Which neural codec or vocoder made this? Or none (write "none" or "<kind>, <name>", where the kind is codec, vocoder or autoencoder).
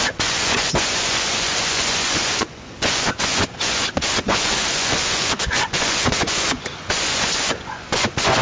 vocoder, Vocos